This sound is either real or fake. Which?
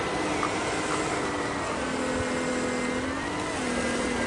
real